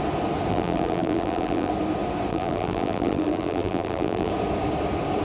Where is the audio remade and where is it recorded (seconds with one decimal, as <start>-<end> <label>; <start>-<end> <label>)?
0.0-0.5 recorded; 0.5-1.7 remade; 1.7-2.3 recorded; 2.3-4.3 remade; 4.3-5.2 recorded